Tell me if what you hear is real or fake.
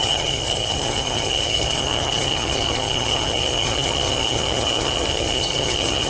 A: fake